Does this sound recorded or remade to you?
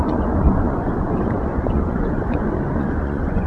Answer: remade